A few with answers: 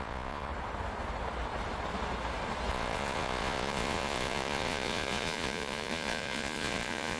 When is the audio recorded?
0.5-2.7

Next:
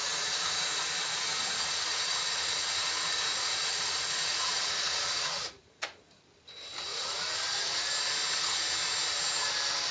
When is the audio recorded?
0.6-1.1; 6.2-6.9; 7.9-9.9